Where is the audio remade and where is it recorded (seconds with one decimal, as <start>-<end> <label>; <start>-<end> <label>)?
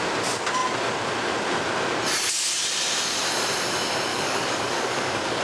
0.0-4.1 recorded; 4.1-5.4 remade